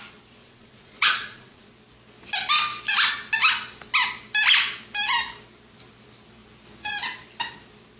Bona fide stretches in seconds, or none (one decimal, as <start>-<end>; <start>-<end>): 0.0-0.4; 1.7-8.0